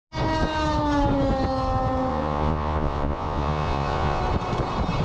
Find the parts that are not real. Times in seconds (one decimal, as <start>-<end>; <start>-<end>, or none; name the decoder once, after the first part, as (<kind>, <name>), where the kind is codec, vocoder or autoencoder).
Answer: 2.1-4.2 (vocoder, Vocos)